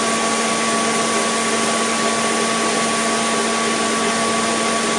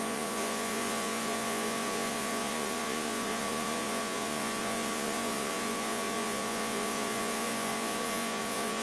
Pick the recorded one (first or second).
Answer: first